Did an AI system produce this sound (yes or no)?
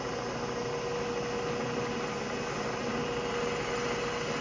no